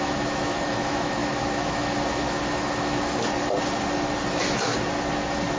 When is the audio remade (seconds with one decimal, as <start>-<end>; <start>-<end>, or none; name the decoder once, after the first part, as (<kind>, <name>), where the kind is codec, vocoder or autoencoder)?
0.0-3.2 (autoencoder, DAC-VAE); 4.3-4.7

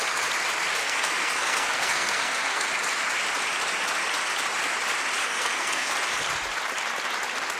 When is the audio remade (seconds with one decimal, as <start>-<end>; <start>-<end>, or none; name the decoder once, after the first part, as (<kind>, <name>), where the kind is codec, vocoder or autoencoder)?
0.8-2.7 (codec, SNAC); 5.2-5.9

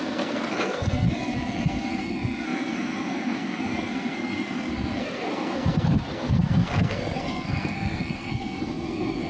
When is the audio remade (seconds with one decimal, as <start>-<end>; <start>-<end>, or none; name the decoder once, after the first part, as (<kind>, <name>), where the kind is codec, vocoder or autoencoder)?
0.0-9.3 (codec, SNAC)

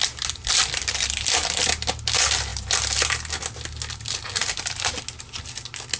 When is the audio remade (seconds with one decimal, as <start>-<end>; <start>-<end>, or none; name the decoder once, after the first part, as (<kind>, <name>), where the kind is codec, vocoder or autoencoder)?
none

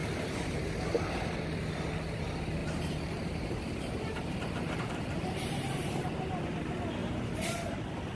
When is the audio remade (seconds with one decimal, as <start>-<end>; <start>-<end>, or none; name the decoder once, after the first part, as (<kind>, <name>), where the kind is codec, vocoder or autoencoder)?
0.0-1.9 (vocoder, BigVGAN v2); 2.6-6.4; 7.0-7.6

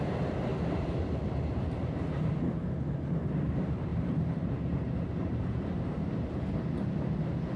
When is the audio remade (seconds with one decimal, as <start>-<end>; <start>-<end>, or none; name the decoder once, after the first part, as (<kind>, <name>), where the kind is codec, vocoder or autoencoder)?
0.5-2.6 (vocoder, BigVGAN v2); 3.9-6.7